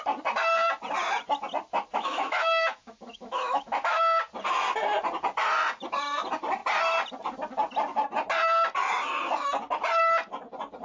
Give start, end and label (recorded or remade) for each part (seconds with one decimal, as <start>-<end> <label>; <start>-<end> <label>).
0.0-1.9 recorded; 1.9-4.0 remade; 4.0-10.8 recorded